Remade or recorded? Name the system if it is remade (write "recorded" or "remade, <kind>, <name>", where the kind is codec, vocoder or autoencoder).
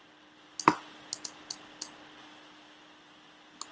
recorded